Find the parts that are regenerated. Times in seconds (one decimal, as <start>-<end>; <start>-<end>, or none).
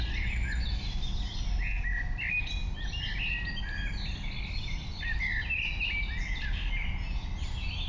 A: none